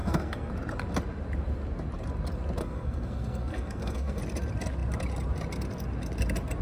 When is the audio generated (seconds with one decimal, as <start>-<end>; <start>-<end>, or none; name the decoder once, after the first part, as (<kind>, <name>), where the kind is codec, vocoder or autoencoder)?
0.0-0.5 (codec, SNAC); 2.6-4.2